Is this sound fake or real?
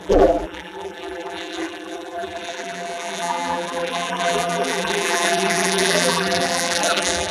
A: fake